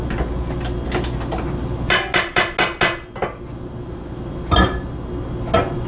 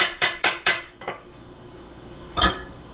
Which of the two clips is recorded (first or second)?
first